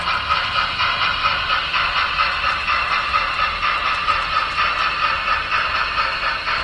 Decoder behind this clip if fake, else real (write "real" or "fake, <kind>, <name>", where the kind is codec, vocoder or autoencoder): real